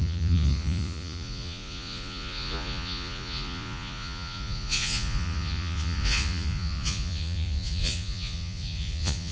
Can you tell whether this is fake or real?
fake